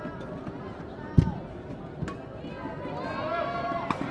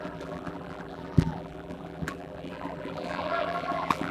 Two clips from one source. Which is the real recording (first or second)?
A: first